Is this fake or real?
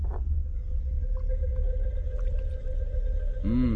real